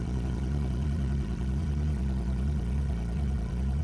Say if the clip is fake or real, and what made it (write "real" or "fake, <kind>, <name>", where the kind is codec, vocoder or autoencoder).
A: fake, vocoder, Vocos